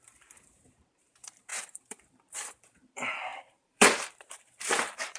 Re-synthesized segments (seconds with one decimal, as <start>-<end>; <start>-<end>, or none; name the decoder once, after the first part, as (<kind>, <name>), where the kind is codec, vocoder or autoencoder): 0.0-5.2 (vocoder, BigVGAN v2)